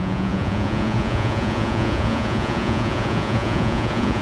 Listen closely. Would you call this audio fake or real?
fake